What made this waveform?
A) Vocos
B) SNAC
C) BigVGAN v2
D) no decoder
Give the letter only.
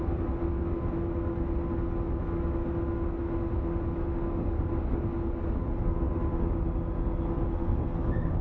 D